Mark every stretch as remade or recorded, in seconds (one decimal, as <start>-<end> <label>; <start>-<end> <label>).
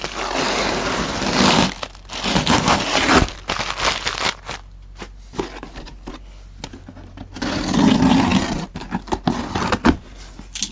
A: 0.0-10.7 recorded